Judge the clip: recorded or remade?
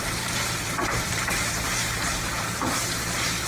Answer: remade